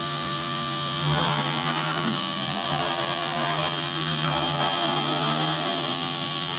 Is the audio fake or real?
fake